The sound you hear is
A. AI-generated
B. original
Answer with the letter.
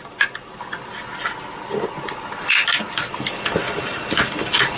B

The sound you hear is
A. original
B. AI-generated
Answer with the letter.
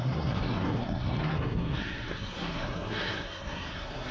B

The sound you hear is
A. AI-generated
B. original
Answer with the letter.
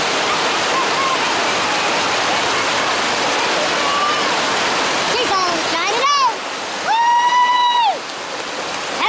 B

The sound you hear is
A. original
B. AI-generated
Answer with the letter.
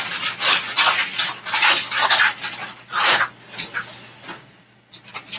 A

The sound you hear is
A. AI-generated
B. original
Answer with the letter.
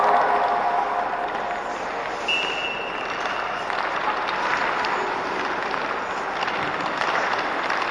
B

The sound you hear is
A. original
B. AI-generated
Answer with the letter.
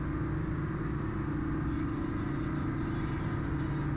A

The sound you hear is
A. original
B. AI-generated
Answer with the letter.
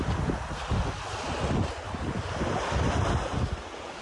A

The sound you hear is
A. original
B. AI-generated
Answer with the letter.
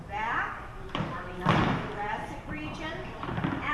B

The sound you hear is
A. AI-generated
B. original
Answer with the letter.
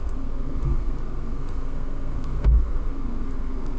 A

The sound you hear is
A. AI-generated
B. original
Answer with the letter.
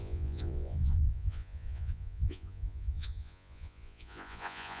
A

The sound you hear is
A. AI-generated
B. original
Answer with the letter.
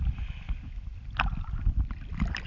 B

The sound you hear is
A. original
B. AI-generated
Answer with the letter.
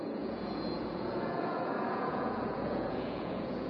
B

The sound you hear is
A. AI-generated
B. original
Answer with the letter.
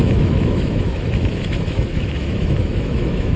A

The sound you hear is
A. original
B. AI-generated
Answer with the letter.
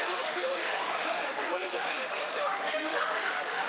B